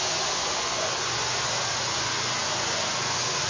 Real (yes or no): no